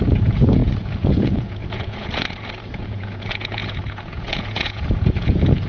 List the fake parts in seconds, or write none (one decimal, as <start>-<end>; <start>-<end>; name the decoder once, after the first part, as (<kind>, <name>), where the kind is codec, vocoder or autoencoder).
0.0-5.7 (vocoder, Vocos)